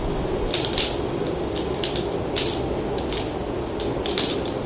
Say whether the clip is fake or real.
real